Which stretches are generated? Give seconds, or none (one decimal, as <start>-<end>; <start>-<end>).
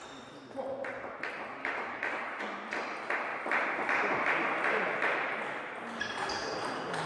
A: 1.6-2.4